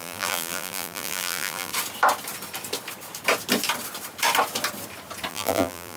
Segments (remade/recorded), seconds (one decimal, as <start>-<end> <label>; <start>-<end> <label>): 0.0-1.7 remade; 1.7-5.3 recorded; 5.3-6.0 remade